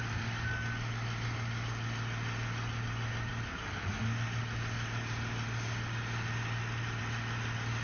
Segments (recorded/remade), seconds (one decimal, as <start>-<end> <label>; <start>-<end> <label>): 0.0-7.8 recorded